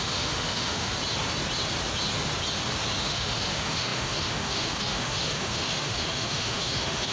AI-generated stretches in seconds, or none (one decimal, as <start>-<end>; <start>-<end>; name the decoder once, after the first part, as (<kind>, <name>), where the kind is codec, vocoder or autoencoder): 0.0-1.0 (autoencoder, DAC-VAE); 3.0-7.1